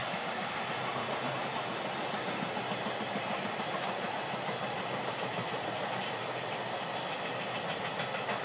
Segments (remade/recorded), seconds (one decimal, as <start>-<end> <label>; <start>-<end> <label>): 0.0-0.6 remade; 0.6-8.4 recorded